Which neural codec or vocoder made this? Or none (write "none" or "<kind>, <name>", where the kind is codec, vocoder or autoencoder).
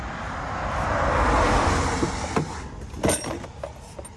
none